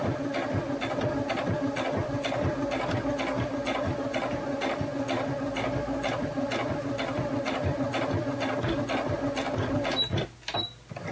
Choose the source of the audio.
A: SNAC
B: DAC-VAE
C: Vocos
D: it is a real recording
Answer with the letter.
D